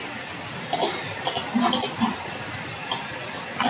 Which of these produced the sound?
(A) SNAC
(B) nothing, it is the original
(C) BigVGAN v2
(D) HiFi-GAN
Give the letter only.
B